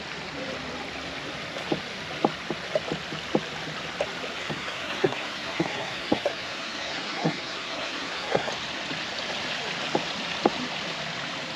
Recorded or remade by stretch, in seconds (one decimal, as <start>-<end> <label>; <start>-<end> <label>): 0.0-4.4 recorded; 4.4-8.5 remade; 8.5-11.6 recorded